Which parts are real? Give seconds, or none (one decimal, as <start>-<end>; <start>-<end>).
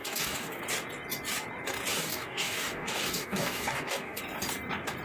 0.6-1.9; 4.2-5.0